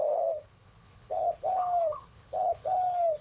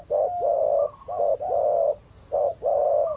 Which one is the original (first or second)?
second